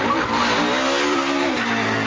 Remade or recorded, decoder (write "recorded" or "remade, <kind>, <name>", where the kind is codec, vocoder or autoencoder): recorded